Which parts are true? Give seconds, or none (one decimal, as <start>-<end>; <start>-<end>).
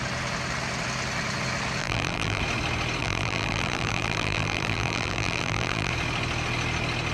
0.0-1.8; 2.4-3.0; 5.9-7.1